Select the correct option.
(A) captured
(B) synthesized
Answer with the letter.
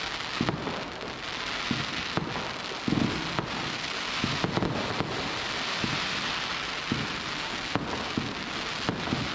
A